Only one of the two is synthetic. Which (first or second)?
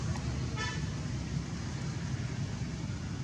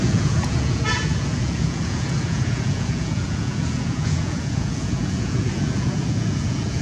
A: second